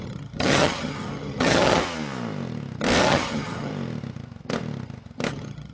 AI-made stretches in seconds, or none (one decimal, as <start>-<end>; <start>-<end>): 0.0-1.8; 3.0-3.7; 5.3-5.7